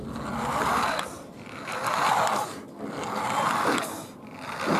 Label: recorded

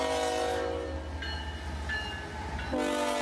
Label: recorded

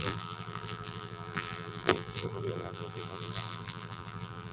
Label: remade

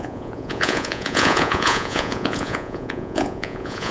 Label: remade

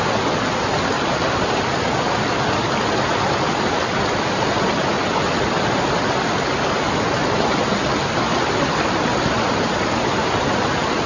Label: recorded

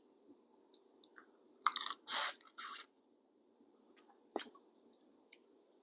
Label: recorded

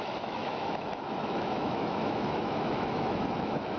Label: remade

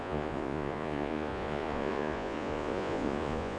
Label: remade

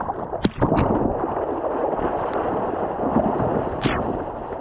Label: recorded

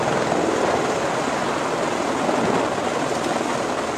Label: recorded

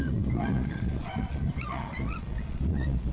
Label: remade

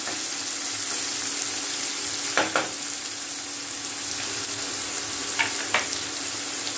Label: recorded